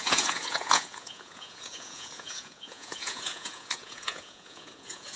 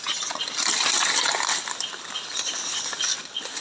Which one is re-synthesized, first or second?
first